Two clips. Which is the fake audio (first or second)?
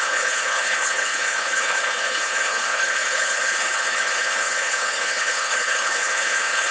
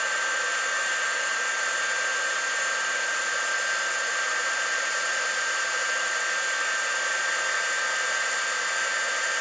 first